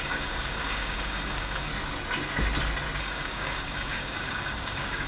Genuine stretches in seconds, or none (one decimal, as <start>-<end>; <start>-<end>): 1.7-3.0